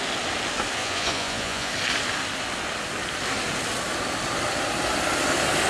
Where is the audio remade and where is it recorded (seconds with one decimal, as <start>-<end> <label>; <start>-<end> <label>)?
0.0-0.8 recorded; 0.8-1.7 remade; 1.7-5.7 recorded